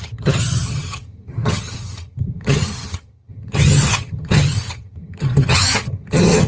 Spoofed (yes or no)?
yes